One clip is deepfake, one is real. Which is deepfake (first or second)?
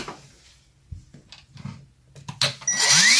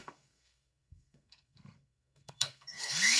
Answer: second